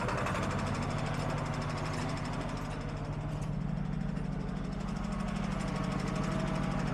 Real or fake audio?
real